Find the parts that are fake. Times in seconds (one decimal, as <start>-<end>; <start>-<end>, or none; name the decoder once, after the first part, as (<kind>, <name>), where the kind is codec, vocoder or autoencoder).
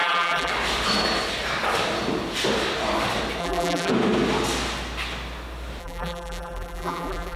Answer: 0.0-0.5 (vocoder, BigVGAN v2); 3.4-3.9; 5.8-7.4